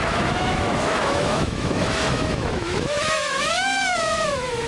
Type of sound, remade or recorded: remade